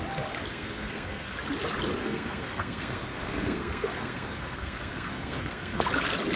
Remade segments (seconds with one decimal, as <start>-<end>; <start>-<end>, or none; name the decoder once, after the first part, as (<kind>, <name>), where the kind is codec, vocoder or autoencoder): 0.5-1.3 (codec, SNAC); 2.0-5.8